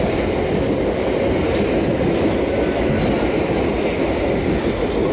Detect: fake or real real